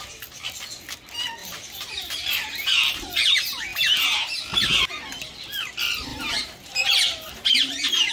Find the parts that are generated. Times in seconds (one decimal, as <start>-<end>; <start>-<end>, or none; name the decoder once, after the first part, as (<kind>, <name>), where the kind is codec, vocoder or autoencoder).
1.4-3.1 (vocoder, BigVGAN v2); 3.7-4.4; 6.1-8.1